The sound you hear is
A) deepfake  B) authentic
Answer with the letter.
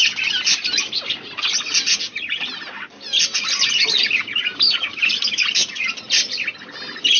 B